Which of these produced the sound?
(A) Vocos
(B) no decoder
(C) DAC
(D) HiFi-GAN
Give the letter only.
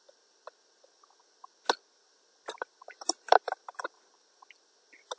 B